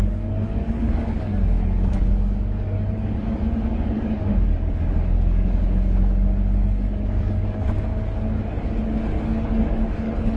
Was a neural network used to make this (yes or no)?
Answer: yes